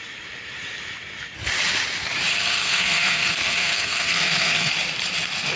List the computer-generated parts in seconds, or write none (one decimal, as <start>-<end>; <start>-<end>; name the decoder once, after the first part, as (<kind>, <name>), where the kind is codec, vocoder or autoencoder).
2.3-4.7 (codec, SNAC)